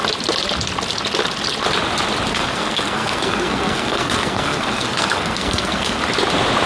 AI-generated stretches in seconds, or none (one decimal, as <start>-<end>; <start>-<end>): 2.3-6.0